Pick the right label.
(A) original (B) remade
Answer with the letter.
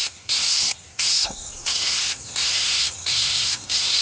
B